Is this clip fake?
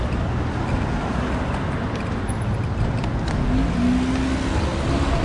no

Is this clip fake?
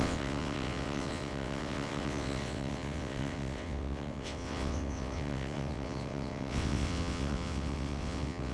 yes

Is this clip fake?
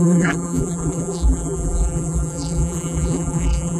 yes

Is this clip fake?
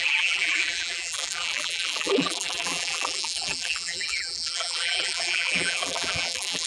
yes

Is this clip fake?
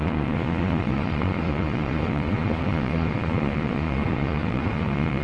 yes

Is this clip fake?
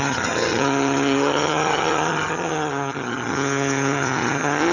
yes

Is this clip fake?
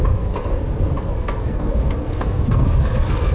yes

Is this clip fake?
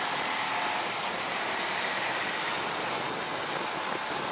no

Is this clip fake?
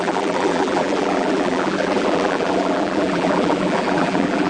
yes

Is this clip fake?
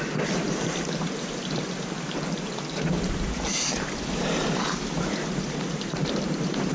yes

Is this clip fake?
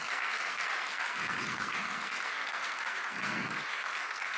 yes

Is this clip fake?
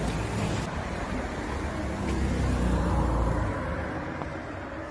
no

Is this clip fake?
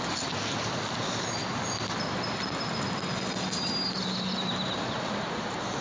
no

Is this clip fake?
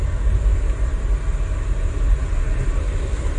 no